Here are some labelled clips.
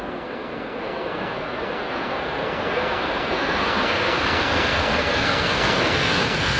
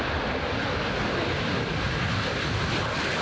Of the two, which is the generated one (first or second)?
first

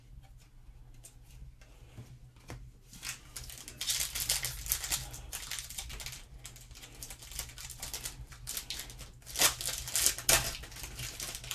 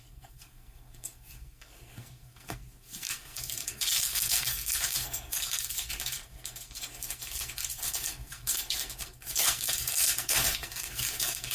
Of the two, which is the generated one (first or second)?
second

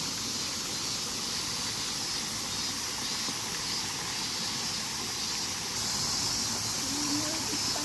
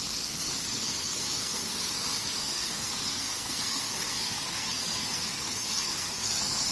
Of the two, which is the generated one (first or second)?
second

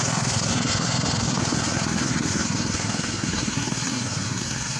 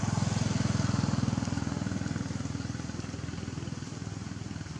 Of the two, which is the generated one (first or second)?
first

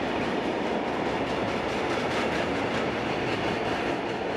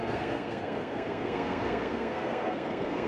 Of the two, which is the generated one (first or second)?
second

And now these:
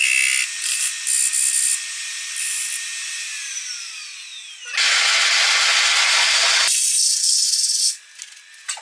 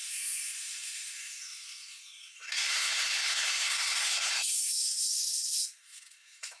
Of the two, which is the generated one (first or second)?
second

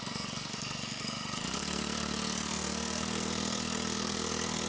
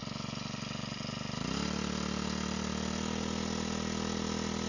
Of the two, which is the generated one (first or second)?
first